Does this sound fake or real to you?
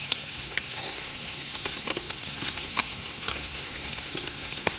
fake